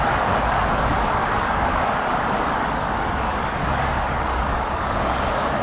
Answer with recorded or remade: remade